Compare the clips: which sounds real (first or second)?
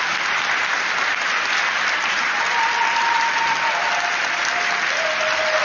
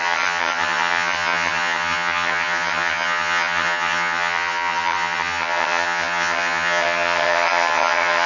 first